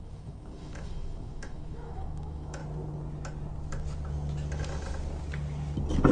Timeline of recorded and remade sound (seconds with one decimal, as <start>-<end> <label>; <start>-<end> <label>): 0.0-2.6 remade; 2.6-6.1 recorded